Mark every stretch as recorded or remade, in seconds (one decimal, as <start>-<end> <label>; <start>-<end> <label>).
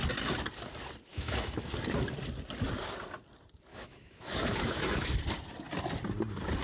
0.0-1.1 recorded; 1.1-1.7 remade; 1.7-3.7 recorded; 3.7-5.1 remade; 5.1-6.6 recorded